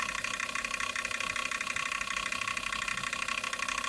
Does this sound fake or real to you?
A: real